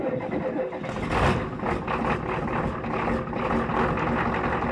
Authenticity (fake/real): real